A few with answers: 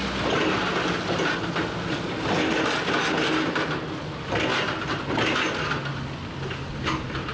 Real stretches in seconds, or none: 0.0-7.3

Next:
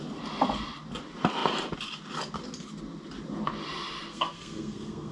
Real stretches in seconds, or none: 0.0-4.1

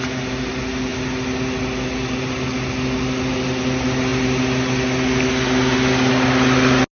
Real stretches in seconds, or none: 0.0-6.9